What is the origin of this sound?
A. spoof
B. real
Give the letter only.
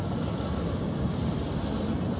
B